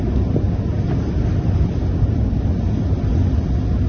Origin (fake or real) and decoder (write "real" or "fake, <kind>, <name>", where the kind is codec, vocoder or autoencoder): real